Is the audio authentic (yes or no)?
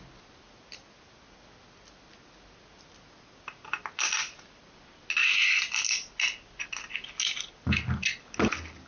yes